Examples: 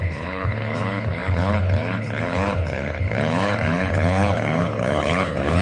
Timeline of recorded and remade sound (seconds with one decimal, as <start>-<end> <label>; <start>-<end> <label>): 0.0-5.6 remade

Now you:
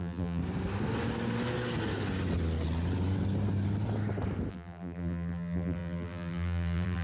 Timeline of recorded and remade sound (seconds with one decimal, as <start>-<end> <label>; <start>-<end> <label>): 0.0-0.4 remade; 0.4-4.5 recorded; 4.5-7.0 remade

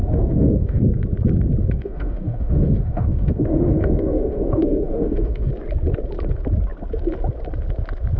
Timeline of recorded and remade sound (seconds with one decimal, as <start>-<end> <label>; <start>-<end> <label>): 0.0-0.8 remade; 0.8-1.6 recorded; 1.6-5.5 remade; 5.5-8.2 recorded

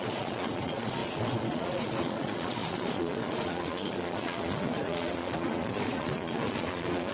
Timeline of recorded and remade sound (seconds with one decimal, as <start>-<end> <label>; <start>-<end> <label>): 0.0-7.1 remade